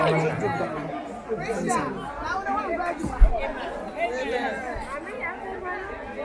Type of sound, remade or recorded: recorded